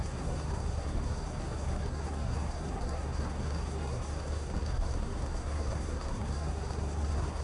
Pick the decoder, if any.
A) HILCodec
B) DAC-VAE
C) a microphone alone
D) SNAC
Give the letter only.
D